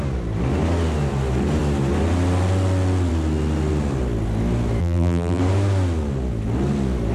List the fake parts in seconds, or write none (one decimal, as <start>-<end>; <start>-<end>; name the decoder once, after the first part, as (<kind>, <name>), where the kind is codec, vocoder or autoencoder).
4.8-5.4 (vocoder, BigVGAN v2)